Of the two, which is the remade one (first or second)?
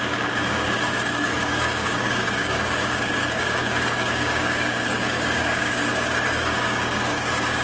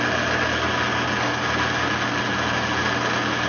first